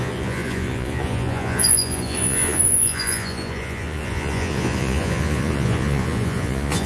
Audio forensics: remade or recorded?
remade